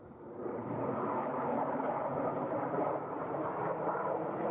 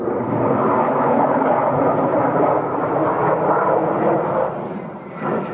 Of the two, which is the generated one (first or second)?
first